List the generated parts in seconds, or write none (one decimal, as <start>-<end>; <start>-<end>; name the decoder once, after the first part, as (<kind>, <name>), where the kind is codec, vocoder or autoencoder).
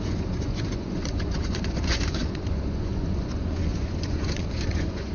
0.0-5.1 (vocoder, Vocos)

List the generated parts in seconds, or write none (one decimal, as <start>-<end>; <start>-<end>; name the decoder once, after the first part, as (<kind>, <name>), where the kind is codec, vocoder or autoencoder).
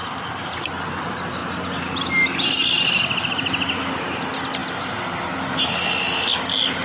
none